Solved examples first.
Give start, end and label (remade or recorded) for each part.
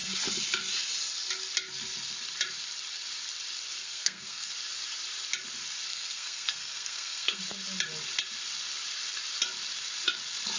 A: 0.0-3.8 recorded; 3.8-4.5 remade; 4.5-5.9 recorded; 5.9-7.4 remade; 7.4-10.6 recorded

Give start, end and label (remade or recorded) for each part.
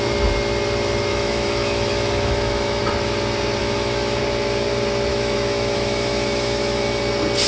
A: 0.0-1.1 recorded; 1.1-2.8 remade; 2.8-3.6 recorded; 3.6-4.2 remade; 4.2-5.1 recorded; 5.1-7.0 remade; 7.0-7.5 recorded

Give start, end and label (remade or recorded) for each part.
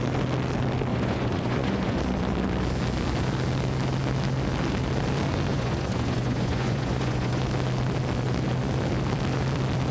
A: 0.0-0.9 recorded; 0.9-2.0 remade; 2.0-5.5 recorded; 5.5-7.4 remade; 7.4-9.9 recorded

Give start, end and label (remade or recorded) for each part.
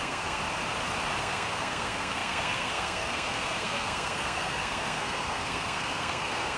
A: 0.0-0.4 remade; 0.4-1.2 recorded; 1.2-6.6 remade